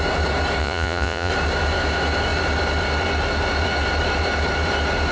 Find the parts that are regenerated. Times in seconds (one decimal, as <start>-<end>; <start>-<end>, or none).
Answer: 0.6-1.3